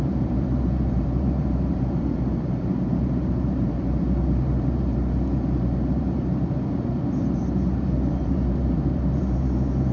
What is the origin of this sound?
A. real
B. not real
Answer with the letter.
B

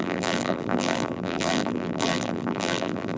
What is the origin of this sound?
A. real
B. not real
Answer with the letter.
B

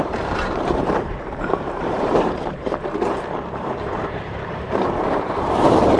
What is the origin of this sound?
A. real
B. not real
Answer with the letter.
B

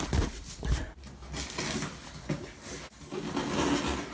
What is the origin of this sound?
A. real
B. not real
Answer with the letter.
A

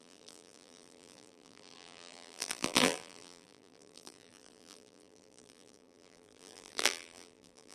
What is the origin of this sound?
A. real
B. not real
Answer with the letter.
B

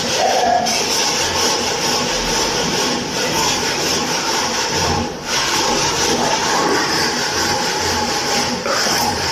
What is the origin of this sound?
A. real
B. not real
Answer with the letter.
B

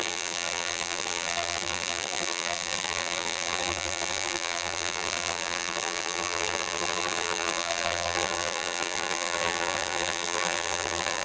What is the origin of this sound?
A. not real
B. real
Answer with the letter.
A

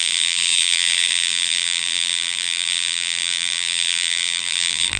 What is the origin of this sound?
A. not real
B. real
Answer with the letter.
A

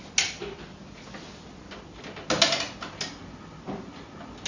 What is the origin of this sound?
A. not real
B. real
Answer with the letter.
B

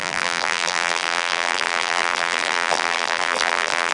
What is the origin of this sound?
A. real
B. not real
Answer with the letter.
B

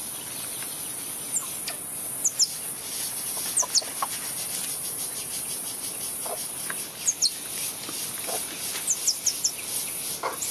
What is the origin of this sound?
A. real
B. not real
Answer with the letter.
A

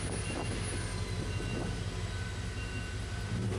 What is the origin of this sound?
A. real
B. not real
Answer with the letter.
A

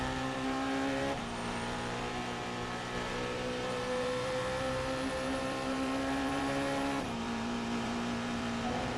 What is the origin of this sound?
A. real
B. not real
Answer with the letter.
B